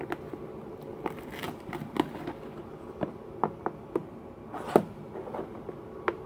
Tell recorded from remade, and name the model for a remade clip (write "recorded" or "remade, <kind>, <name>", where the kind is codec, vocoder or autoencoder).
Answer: recorded